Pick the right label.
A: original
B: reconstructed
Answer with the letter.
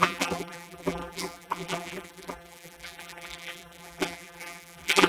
B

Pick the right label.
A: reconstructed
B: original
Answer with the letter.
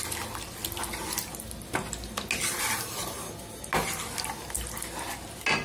B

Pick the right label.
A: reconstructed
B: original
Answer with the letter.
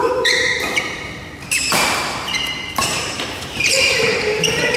A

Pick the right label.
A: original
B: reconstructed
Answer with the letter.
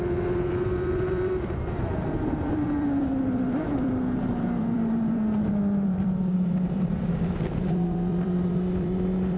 B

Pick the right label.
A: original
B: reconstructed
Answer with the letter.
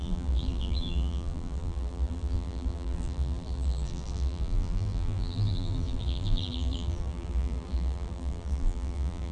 B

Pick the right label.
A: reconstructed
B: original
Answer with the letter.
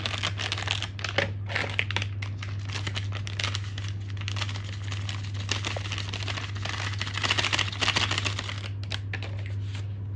B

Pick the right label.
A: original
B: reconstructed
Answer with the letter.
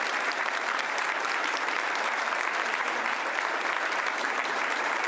B